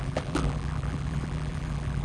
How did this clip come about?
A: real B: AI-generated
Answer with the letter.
B